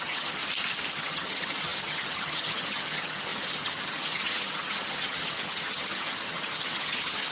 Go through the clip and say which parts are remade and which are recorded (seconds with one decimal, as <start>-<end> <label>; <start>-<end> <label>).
0.0-0.4 remade; 0.4-1.0 recorded; 1.0-7.3 remade